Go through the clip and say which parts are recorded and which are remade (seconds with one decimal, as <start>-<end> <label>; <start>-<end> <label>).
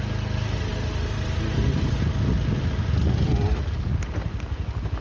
0.0-5.0 recorded